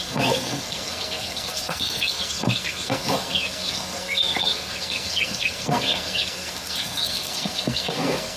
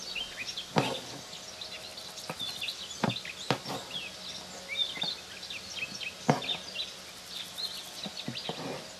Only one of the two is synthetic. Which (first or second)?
first